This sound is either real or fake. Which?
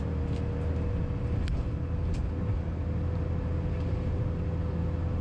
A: real